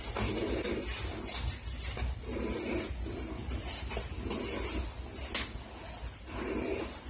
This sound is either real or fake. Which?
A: real